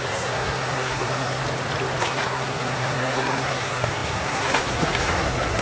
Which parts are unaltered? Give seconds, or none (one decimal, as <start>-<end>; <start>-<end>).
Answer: 1.4-2.0